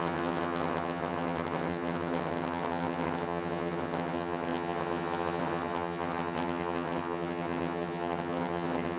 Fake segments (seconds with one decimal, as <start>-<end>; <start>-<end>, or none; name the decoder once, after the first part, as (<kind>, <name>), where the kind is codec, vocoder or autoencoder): 0.0-9.0 (vocoder, HiFi-GAN)